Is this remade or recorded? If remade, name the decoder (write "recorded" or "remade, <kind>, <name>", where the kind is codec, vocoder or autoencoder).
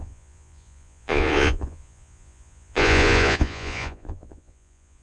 remade, vocoder, Vocos